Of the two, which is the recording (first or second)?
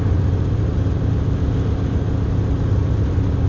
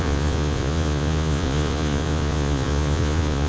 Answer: first